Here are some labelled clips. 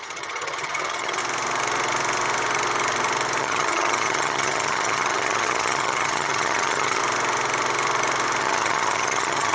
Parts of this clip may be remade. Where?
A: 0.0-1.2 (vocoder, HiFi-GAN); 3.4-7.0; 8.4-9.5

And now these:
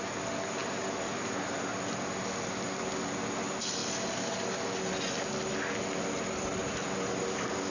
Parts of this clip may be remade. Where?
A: none

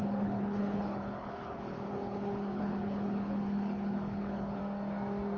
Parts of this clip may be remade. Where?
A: 0.0-4.6 (codec, HILCodec)

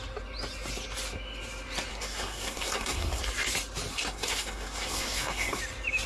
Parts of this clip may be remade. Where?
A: 1.9-3.2 (codec, SNAC); 3.9-5.6

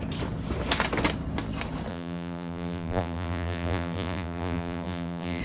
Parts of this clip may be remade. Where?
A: 1.9-5.4 (vocoder, BigVGAN v2)